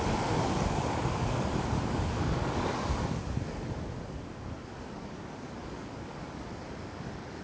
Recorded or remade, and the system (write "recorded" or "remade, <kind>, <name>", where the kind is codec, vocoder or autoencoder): remade, codec, DAC